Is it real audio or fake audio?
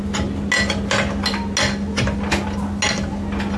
real